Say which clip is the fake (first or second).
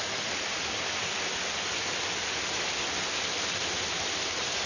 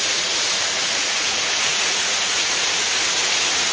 second